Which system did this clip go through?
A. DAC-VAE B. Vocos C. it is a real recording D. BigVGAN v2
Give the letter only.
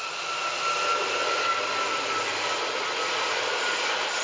C